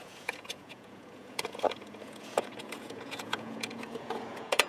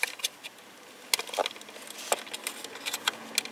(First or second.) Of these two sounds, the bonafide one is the second